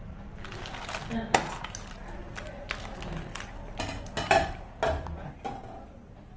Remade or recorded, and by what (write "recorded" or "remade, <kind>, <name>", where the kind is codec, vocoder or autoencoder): recorded